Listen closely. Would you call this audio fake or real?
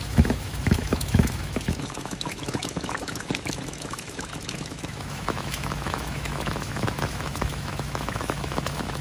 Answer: fake